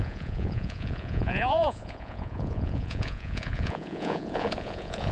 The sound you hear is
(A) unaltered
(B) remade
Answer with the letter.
B